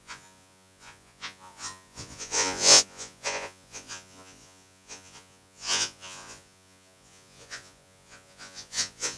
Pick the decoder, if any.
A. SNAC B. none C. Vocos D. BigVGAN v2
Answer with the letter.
C